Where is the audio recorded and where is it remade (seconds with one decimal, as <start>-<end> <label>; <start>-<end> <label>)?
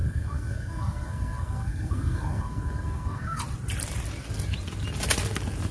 0.0-3.4 remade; 3.4-5.7 recorded